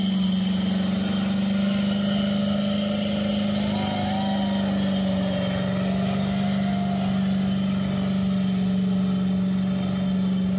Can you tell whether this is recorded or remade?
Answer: recorded